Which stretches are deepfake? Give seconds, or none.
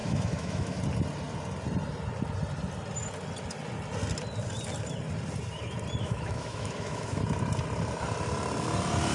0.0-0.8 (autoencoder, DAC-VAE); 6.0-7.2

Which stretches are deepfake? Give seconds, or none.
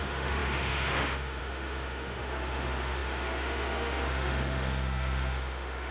0.0-5.9 (autoencoder, DAC-VAE)